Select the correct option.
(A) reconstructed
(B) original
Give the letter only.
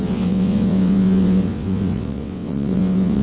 A